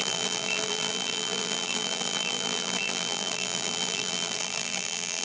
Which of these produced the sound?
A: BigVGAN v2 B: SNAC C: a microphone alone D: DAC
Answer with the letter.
A